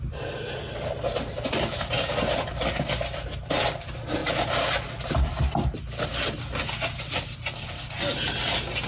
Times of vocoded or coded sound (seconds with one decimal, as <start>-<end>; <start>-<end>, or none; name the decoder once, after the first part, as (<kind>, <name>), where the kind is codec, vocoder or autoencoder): none